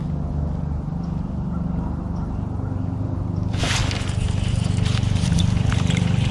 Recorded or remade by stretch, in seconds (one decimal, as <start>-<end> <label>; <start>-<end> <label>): 0.0-2.3 recorded; 2.3-3.8 remade; 3.8-4.5 recorded; 4.5-6.3 remade